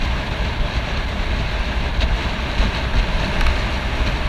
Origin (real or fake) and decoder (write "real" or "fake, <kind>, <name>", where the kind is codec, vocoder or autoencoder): real